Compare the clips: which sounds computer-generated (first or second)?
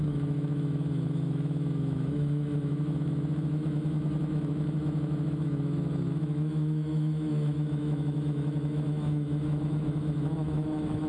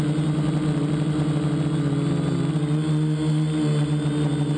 first